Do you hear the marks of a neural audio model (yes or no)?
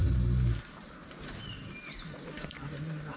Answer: no